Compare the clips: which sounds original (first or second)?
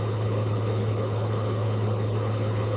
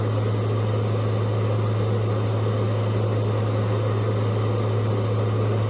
second